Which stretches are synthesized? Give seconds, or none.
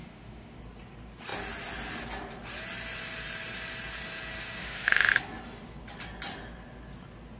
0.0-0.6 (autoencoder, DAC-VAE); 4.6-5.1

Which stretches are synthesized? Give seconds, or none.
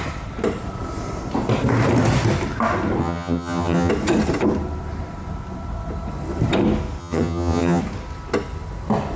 3.0-3.9 (vocoder, HiFi-GAN); 7.0-7.8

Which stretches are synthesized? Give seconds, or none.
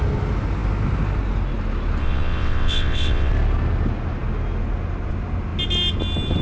2.0-3.3 (vocoder, WaveNeXt)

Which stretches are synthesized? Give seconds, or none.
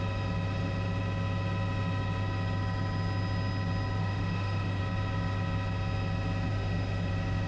4.0-4.8 (autoencoder, DAC-VAE); 6.5-7.1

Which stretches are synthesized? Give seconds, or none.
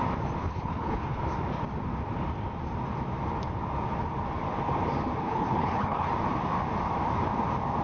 0.4-1.2 (codec, HILCodec); 5.2-6.1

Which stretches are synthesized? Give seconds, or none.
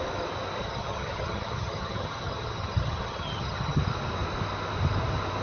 0.6-3.8 (vocoder, HiFi-GAN)